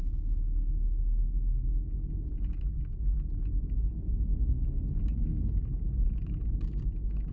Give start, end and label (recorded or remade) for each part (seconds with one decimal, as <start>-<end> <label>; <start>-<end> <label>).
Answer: 0.0-4.3 recorded; 4.3-4.8 remade; 4.8-5.3 recorded; 5.3-7.3 remade